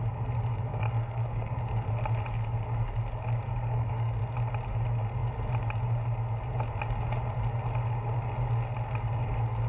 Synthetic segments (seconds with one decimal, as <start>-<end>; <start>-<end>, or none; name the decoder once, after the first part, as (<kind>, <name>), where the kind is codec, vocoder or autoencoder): 0.7-1.6 (codec, DAC); 3.5-4.2